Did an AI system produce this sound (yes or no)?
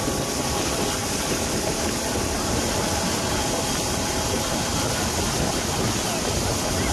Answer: no